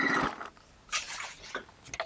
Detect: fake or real real